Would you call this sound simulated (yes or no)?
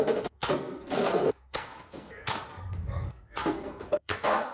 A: yes